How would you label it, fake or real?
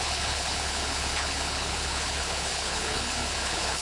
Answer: fake